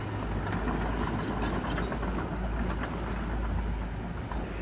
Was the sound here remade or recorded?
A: recorded